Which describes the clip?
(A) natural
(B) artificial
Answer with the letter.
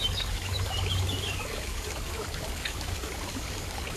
B